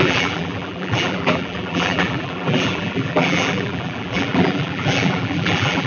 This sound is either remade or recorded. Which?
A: remade